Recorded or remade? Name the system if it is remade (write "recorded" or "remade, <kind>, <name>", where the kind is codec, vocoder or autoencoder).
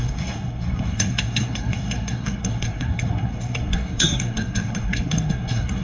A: remade, codec, SNAC